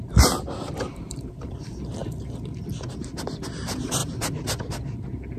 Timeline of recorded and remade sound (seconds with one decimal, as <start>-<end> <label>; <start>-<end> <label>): 0.0-0.9 recorded; 0.9-1.5 remade; 1.5-5.4 recorded